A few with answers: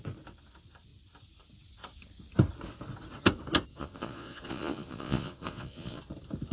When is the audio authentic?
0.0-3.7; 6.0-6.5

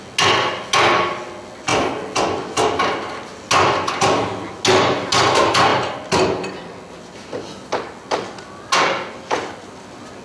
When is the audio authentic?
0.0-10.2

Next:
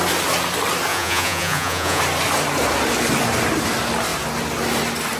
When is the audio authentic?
0.0-0.9; 2.0-5.2

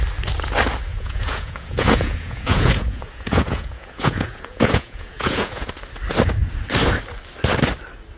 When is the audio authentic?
0.0-0.9; 5.7-8.2

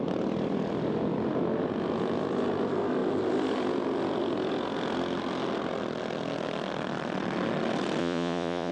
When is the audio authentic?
0.0-8.0